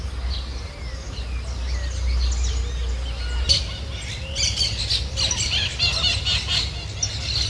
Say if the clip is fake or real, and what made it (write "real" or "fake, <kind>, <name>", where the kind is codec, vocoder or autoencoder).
real